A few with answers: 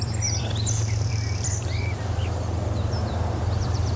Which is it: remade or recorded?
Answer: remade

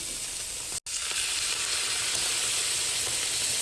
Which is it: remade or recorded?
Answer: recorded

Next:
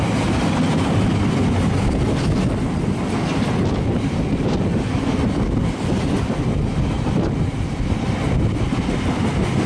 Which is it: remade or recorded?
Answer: recorded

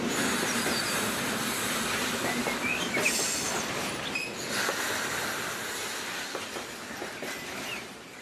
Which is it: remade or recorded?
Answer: remade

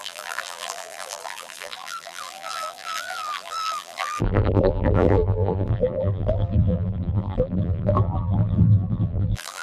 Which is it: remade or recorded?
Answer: remade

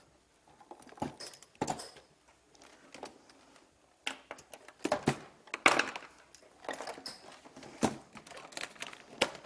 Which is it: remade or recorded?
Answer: recorded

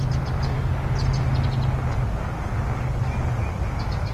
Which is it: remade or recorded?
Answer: recorded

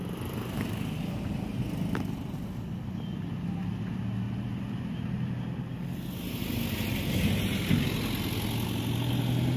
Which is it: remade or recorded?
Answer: recorded